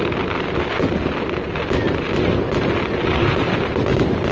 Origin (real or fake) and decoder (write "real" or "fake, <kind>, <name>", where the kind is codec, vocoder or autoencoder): real